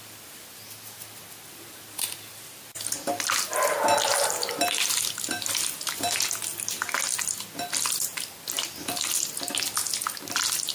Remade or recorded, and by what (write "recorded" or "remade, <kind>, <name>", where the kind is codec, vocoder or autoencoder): recorded